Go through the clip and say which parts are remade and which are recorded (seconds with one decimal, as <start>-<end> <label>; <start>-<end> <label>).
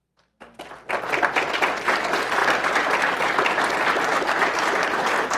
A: 0.0-2.4 recorded; 2.4-3.3 remade; 3.3-4.1 recorded; 4.1-4.8 remade; 4.8-5.4 recorded